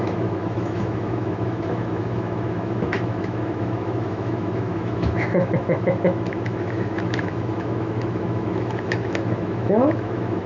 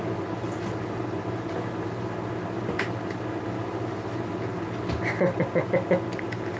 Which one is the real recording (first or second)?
second